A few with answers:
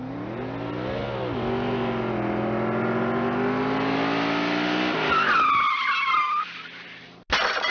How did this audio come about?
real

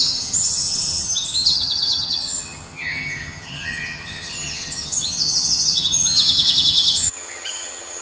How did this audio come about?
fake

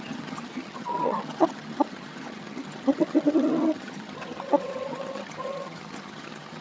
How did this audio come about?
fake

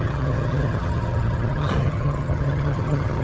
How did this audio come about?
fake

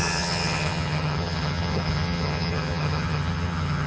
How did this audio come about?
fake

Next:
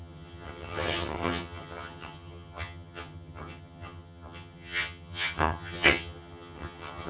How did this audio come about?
fake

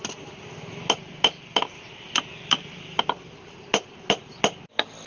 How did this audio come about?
real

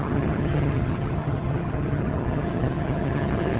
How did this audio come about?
fake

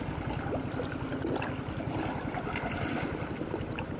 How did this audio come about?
real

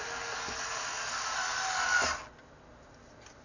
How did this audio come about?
real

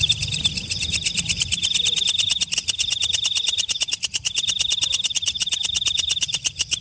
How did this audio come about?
real